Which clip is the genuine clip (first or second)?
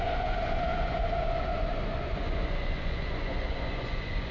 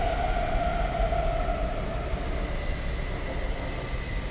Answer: second